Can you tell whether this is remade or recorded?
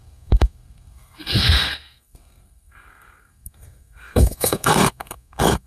remade